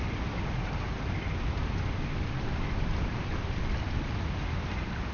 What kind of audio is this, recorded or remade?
recorded